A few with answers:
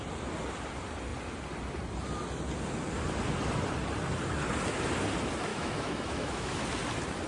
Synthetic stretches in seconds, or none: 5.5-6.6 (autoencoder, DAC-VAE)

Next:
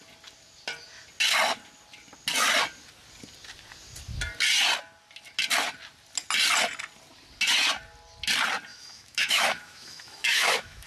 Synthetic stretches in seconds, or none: 8.7-10.9 (autoencoder, DAC-VAE)